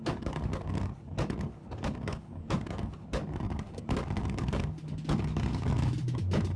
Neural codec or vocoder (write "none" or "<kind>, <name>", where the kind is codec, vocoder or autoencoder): codec, DAC